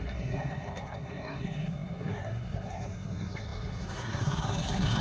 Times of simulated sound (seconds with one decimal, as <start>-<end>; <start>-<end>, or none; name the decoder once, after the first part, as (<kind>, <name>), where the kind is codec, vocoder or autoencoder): 0.0-5.0 (codec, SNAC)